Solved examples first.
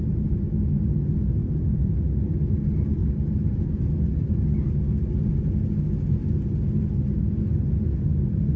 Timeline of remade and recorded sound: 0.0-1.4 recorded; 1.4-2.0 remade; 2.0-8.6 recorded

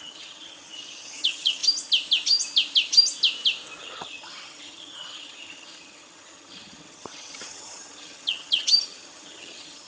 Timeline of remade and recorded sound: 0.0-1.6 remade; 1.6-3.8 recorded; 3.8-9.9 remade